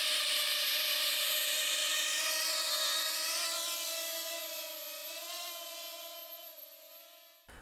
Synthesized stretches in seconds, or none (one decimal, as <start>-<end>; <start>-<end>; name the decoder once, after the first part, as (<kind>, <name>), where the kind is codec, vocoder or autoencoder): 1.8-3.0 (vocoder, BigVGAN v2); 5.0-5.5; 6.2-6.9